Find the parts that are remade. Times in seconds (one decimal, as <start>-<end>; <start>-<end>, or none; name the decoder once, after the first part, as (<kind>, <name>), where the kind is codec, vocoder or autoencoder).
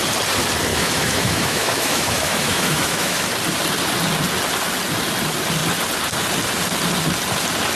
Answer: 0.7-3.2 (autoencoder, DAC-VAE)